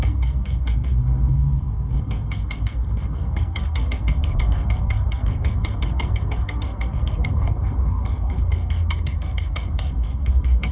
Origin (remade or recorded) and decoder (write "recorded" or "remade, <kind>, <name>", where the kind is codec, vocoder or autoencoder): remade, codec, SNAC